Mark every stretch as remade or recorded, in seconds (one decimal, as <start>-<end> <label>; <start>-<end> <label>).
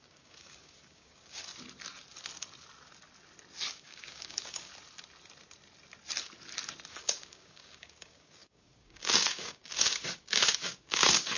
0.0-1.5 remade; 1.5-3.7 recorded; 3.7-4.7 remade; 4.7-6.9 recorded; 6.9-11.4 remade